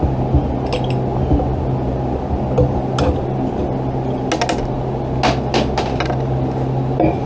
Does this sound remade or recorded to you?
recorded